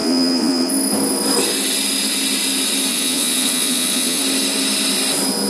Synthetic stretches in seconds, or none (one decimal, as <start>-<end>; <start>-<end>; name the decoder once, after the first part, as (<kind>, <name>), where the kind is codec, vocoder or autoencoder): 0.0-0.7 (vocoder, Vocos); 2.9-4.2